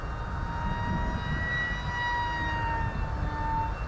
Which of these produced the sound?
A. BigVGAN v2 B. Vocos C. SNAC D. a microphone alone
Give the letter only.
D